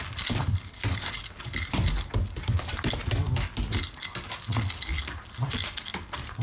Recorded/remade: recorded